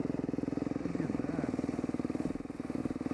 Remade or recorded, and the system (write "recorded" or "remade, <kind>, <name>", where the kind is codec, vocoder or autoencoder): recorded